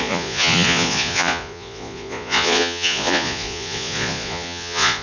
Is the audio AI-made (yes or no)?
yes